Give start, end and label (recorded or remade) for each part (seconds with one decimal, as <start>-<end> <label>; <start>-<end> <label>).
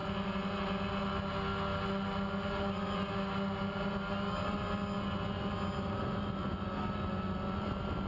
0.0-8.1 recorded